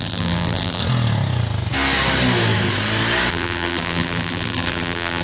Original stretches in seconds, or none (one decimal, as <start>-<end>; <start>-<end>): 0.8-3.3